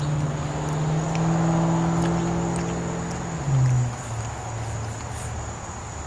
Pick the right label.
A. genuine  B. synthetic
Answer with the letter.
A